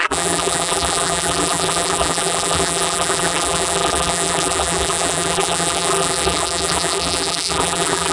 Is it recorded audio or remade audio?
remade